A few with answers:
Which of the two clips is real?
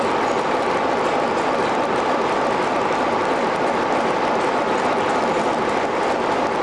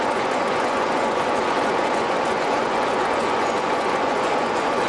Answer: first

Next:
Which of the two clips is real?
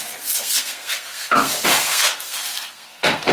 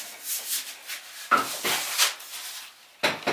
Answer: second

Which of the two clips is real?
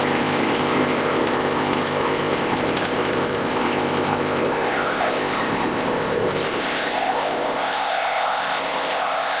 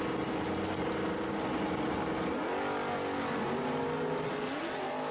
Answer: second